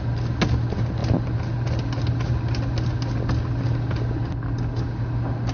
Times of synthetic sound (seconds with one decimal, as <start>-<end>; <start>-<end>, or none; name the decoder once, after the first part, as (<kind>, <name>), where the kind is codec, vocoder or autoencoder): none